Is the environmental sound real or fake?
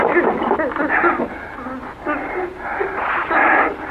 real